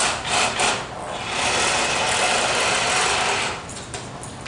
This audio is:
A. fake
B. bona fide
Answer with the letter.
B